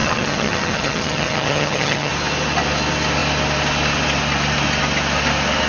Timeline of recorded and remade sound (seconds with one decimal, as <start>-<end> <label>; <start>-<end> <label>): 0.0-2.1 remade; 2.1-5.7 recorded